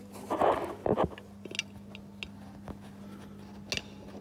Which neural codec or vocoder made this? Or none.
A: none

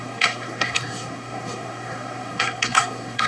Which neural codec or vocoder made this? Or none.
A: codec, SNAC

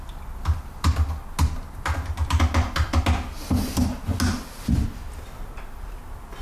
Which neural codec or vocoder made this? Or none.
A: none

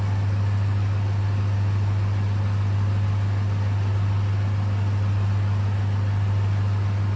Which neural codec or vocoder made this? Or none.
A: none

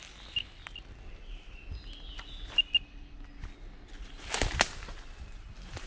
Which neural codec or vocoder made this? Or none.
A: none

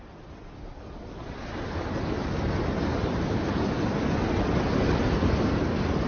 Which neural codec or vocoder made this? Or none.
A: none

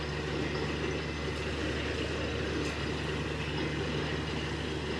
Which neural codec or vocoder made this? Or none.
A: none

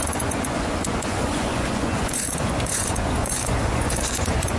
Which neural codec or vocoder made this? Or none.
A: vocoder, Vocos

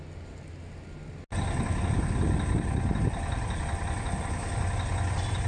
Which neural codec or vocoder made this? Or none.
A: none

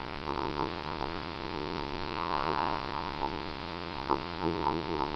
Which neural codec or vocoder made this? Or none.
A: vocoder, Vocos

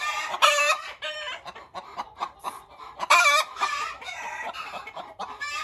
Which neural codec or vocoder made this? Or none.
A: vocoder, BigVGAN v2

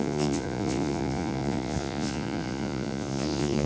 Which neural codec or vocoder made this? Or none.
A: vocoder, Vocos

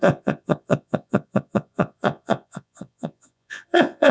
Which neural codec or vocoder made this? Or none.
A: vocoder, Vocos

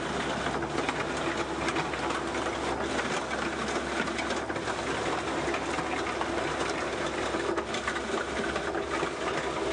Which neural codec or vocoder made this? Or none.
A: none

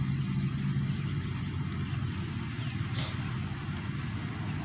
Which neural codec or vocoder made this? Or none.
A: none